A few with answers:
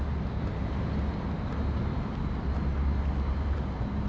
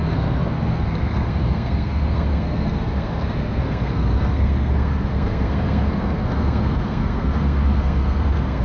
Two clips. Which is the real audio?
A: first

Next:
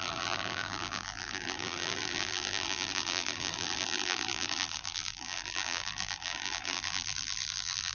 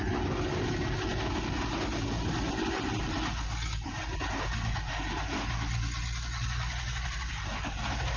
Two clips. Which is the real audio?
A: second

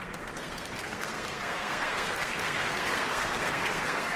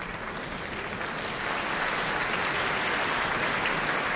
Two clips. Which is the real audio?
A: second